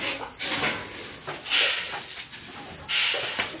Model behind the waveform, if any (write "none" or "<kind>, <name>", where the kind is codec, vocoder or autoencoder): none